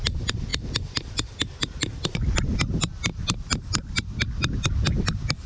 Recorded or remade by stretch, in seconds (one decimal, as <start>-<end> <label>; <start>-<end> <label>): 0.0-5.5 recorded